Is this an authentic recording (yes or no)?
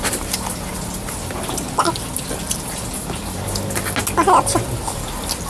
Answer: yes